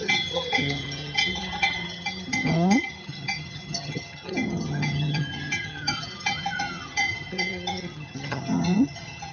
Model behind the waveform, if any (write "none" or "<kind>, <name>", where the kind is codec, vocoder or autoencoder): vocoder, HiFi-GAN